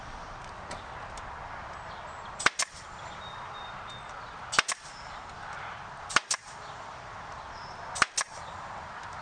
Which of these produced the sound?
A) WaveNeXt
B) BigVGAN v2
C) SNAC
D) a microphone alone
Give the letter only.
D